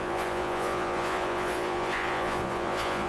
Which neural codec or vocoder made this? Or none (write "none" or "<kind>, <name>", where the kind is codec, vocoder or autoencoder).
vocoder, Vocos